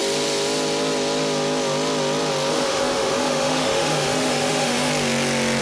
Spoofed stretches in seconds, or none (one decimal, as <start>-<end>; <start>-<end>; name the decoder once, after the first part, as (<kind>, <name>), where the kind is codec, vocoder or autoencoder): 2.5-4.9 (autoencoder, DAC-VAE)

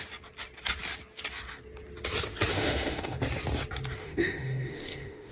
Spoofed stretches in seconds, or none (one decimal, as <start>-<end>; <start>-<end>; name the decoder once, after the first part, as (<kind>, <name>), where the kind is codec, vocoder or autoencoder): 2.5-3.2 (autoencoder, DAC-VAE); 4.0-5.3